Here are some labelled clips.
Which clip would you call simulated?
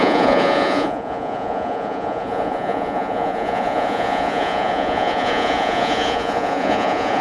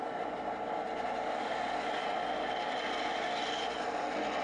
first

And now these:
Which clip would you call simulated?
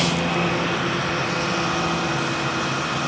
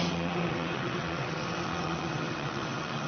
second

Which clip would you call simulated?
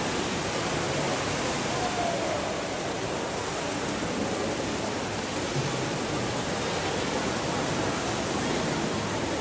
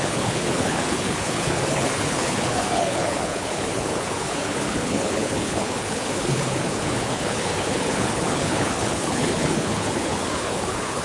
second